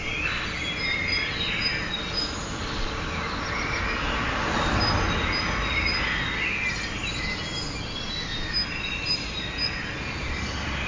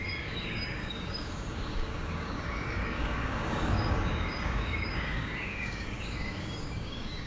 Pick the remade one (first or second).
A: second